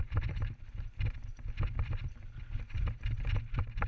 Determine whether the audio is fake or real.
fake